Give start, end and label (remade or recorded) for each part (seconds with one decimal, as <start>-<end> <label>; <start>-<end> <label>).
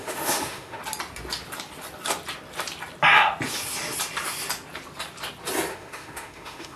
0.0-0.8 remade; 0.8-5.7 recorded; 5.7-6.8 remade